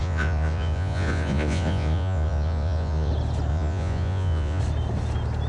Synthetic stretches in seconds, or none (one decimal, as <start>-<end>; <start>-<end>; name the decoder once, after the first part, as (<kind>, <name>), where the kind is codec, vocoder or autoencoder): 0.0-3.1 (vocoder, Vocos); 3.5-4.6